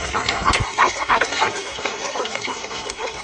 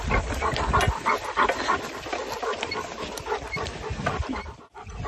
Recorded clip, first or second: second